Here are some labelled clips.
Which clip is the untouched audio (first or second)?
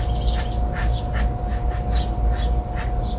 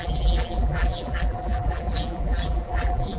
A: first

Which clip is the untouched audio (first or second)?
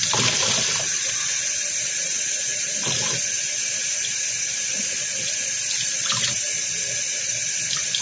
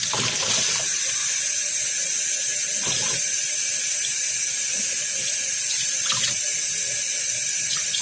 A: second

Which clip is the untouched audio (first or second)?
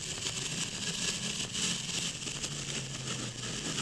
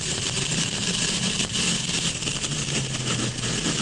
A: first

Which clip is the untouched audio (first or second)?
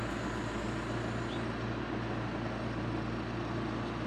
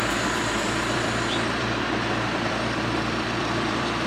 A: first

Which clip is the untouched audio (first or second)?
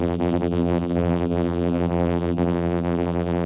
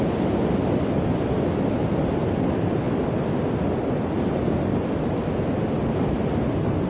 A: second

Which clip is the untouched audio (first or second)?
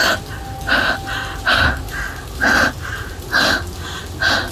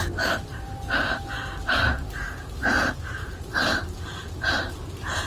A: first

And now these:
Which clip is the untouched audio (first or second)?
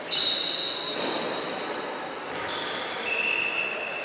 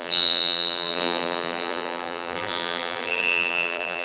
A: first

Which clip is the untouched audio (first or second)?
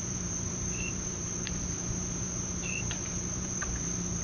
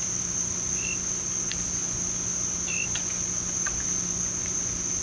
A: second